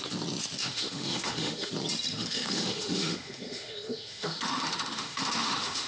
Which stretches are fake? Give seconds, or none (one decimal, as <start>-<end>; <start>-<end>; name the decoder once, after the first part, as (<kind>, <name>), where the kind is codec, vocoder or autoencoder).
0.6-1.7 (autoencoder, DAC-VAE); 2.1-5.9